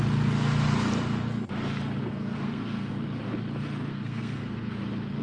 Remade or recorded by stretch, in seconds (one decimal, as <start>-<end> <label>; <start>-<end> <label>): 0.0-2.0 recorded; 2.0-2.9 remade; 2.9-3.9 recorded; 3.9-4.7 remade; 4.7-5.2 recorded